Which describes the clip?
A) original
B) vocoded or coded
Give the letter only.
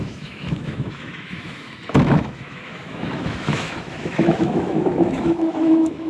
B